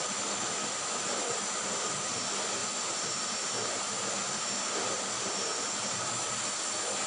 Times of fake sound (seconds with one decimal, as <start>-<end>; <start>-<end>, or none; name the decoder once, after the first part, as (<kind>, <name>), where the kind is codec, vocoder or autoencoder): none